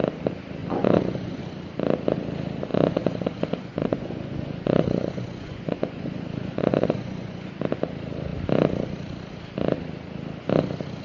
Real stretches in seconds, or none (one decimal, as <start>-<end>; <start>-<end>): 0.0-0.6; 1.4-2.7; 7.5-11.0